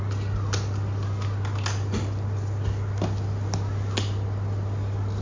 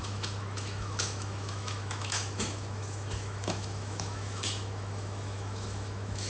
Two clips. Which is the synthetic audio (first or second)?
second